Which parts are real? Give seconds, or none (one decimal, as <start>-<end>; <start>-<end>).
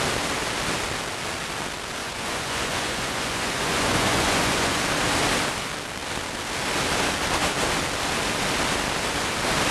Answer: 0.0-2.0; 4.8-9.7